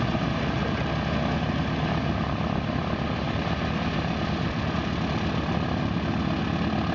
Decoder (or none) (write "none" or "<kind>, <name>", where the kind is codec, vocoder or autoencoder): none